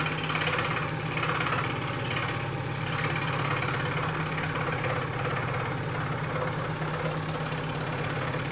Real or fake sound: real